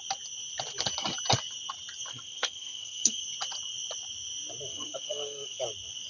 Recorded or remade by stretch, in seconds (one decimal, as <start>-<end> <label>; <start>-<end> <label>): 0.0-2.1 recorded; 2.1-3.2 remade; 3.2-4.7 recorded; 4.7-5.6 remade; 5.6-6.1 recorded